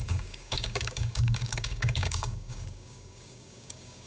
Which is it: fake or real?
fake